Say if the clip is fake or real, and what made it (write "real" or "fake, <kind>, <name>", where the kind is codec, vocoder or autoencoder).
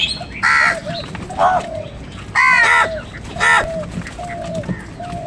real